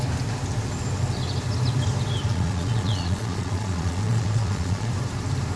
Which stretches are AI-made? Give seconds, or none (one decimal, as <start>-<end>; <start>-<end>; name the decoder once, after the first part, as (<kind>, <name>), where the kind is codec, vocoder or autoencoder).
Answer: 2.3-4.9 (vocoder, Vocos)